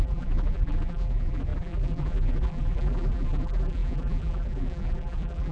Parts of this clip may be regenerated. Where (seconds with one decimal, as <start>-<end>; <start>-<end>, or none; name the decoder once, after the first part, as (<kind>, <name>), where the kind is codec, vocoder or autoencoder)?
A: 0.0-5.5 (vocoder, BigVGAN v2)